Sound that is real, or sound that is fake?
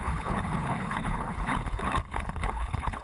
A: fake